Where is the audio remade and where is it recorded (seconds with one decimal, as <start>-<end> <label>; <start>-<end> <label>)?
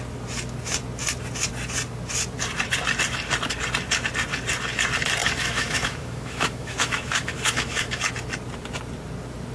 0.0-5.2 recorded; 5.2-8.0 remade; 8.0-9.5 recorded